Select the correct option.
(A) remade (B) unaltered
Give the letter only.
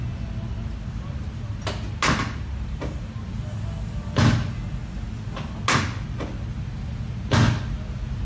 B